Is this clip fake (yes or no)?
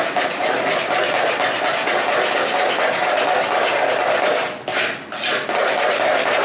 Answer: no